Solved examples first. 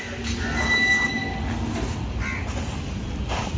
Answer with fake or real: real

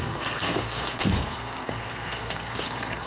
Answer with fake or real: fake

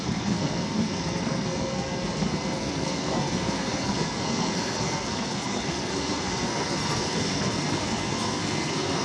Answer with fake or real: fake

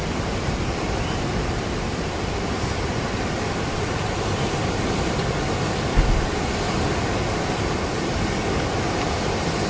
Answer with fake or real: real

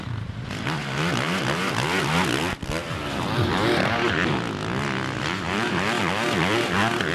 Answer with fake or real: real